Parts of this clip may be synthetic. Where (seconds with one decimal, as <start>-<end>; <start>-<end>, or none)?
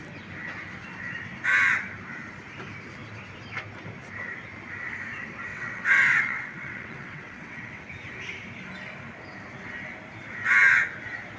5.5-7.8